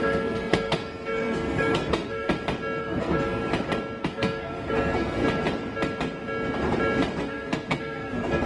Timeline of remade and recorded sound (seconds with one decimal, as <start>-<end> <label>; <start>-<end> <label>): 0.0-2.3 remade; 2.3-2.8 recorded; 2.8-3.4 remade; 3.4-4.0 recorded; 4.0-5.2 remade; 5.2-7.2 recorded; 7.2-8.5 remade